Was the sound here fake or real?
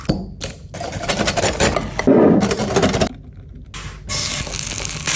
real